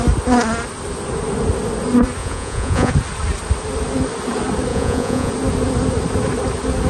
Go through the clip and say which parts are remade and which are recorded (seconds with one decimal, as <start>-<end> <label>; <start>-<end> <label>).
0.0-2.2 recorded; 2.2-2.9 remade; 2.9-4.7 recorded; 4.7-5.3 remade; 5.3-6.9 recorded